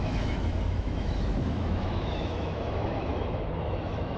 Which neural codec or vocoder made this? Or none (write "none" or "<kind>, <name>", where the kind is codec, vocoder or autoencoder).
autoencoder, DAC-VAE